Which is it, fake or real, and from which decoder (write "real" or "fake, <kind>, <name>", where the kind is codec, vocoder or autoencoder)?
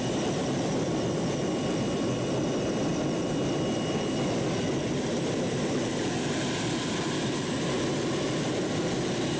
real